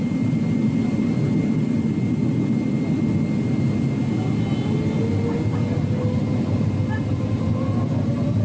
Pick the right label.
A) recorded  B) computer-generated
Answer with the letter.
A